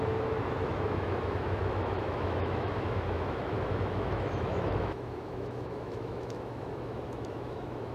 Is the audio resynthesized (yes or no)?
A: yes